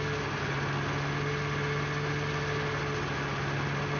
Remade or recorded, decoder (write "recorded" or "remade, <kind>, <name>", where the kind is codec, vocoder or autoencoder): recorded